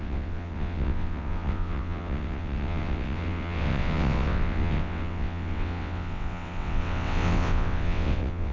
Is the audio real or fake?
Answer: fake